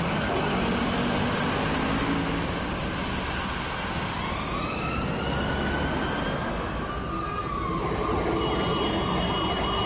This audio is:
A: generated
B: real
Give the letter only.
B